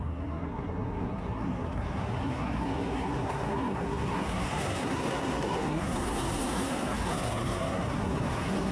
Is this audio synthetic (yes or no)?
yes